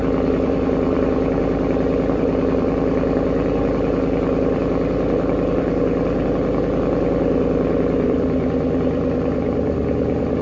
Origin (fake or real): fake